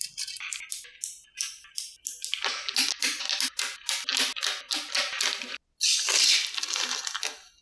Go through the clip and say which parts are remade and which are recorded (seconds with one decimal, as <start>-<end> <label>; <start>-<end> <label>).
0.0-7.6 recorded